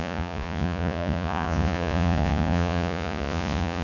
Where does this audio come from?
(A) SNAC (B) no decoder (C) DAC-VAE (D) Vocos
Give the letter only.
D